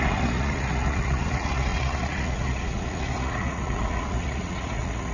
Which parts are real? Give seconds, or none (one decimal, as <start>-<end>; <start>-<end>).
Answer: none